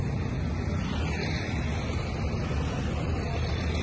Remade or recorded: recorded